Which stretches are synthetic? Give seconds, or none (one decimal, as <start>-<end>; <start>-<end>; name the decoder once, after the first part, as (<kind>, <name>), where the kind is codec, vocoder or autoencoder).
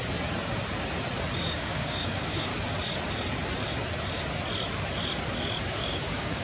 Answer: 1.5-2.5 (codec, DAC); 5.6-6.4